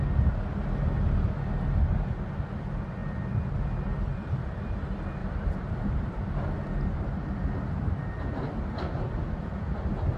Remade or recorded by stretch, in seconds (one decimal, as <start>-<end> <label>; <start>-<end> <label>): 0.0-4.1 recorded; 4.1-4.8 remade; 4.8-5.2 recorded; 5.2-6.2 remade; 6.2-10.2 recorded

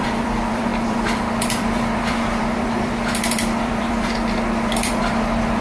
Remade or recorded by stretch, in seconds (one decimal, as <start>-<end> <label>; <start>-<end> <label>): 0.0-5.6 remade